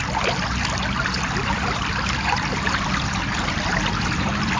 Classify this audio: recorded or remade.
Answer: recorded